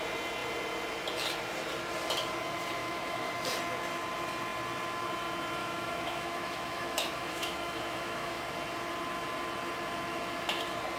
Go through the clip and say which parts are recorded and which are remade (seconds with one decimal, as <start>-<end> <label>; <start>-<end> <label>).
0.0-2.8 recorded; 2.8-3.3 remade; 3.3-5.6 recorded; 5.6-8.4 remade; 8.4-11.0 recorded